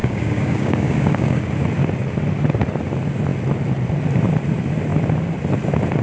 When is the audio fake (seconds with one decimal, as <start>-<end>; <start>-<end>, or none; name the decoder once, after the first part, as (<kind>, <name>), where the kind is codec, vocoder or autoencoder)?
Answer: 0.0-1.4 (codec, DAC)